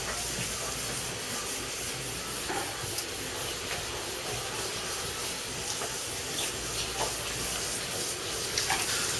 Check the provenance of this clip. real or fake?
real